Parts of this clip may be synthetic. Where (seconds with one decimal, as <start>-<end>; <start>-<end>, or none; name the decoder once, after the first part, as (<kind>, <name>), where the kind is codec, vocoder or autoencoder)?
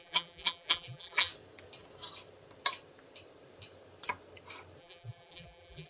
0.0-1.3 (vocoder, BigVGAN v2); 4.8-5.9